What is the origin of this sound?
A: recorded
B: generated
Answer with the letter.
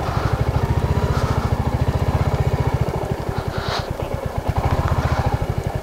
A